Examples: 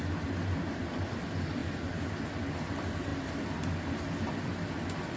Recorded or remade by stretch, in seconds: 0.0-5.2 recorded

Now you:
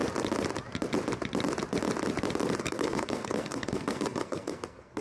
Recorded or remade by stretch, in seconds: 0.0-2.6 recorded; 2.6-5.0 remade

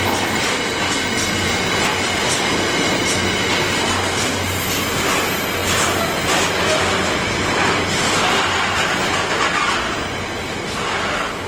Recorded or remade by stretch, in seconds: 0.0-11.5 recorded

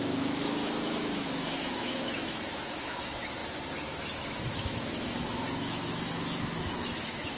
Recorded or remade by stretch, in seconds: 0.0-7.4 remade

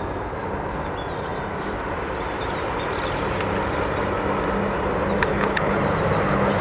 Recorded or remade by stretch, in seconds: 0.0-5.3 recorded; 5.3-5.8 remade; 5.8-6.6 recorded